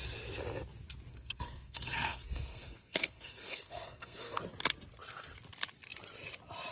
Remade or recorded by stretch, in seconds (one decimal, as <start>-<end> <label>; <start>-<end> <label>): 0.0-1.1 recorded; 1.1-4.4 remade; 4.4-6.7 recorded